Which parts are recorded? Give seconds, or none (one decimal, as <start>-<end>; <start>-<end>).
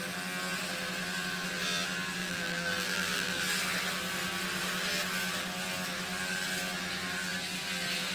0.0-2.2; 3.4-8.1